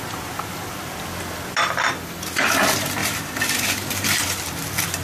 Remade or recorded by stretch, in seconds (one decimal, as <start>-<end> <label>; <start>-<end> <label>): 0.0-5.0 recorded